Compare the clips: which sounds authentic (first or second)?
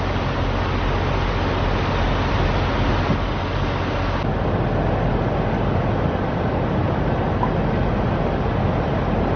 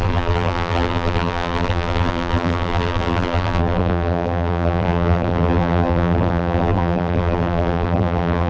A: first